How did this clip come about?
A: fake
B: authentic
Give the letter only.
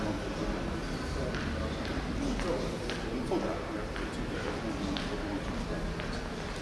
B